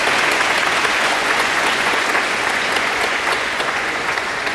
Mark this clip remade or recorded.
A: remade